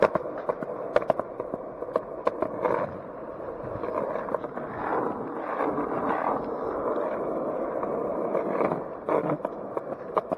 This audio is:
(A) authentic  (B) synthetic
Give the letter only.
A